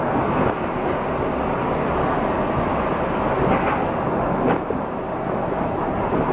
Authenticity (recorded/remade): recorded